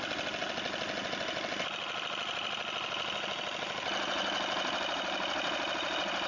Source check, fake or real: real